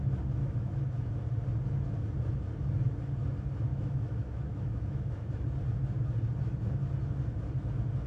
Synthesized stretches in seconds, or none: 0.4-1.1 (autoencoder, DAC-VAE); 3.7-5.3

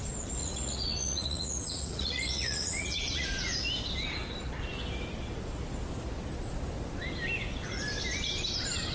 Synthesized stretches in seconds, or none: 0.4-3.5 (vocoder, Vocos)

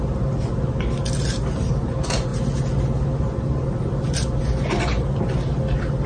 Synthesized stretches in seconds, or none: none